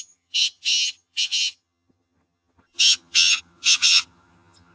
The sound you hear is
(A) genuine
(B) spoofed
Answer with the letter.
B